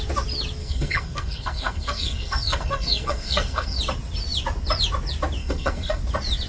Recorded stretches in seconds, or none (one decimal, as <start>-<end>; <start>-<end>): 0.0-0.6; 3.8-5.4; 6.0-6.5